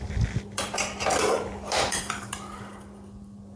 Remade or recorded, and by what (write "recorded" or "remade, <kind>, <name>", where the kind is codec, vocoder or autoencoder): remade, vocoder, BigVGAN v2